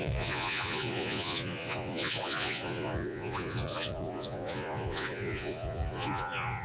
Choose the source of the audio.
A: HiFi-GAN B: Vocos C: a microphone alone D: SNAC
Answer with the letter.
B